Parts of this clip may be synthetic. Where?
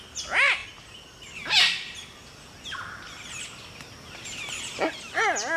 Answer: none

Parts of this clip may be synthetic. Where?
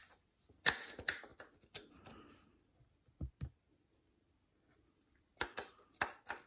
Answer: none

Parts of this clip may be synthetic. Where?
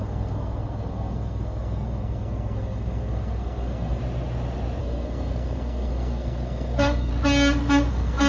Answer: 0.0-4.0 (codec, SNAC); 4.8-7.1; 7.9-8.3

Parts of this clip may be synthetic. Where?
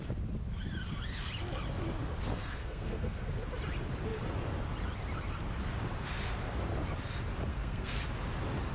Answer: 2.3-3.3 (codec, SNAC); 7.5-8.0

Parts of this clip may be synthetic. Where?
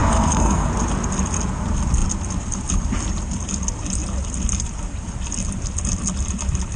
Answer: 0.0-0.7 (codec, SNAC)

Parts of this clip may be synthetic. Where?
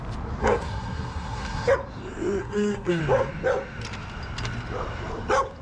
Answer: 0.4-1.7 (codec, SNAC); 2.4-3.0